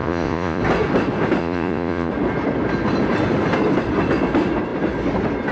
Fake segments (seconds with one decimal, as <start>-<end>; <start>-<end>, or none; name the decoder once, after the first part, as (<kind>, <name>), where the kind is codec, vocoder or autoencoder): 0.0-0.6 (vocoder, Vocos); 1.4-2.1